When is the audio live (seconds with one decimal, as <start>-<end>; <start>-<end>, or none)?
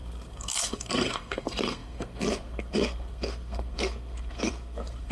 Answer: none